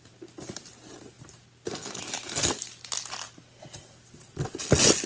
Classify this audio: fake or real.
real